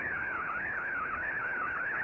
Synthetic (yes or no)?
yes